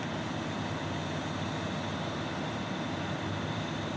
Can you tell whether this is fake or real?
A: real